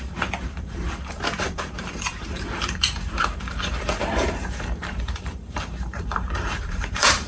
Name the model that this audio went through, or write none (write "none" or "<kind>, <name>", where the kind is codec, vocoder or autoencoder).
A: vocoder, BigVGAN v2